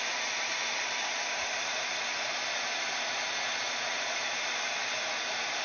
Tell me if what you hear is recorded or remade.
remade